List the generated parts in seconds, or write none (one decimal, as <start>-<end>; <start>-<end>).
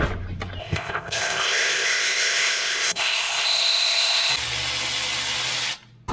0.6-4.3